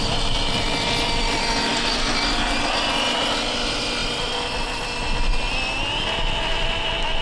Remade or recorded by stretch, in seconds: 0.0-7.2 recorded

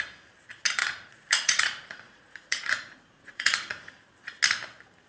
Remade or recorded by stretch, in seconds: 0.0-0.8 recorded; 0.8-3.9 remade; 3.9-5.1 recorded

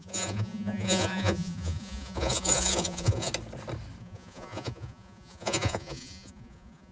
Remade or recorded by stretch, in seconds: 0.0-3.3 remade; 3.3-4.0 recorded; 4.0-6.9 remade